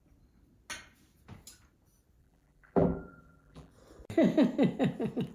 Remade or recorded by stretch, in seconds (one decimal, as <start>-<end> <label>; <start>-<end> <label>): 0.0-2.2 recorded; 2.2-3.7 remade; 3.7-5.3 recorded